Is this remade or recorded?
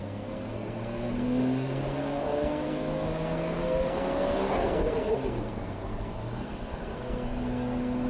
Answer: remade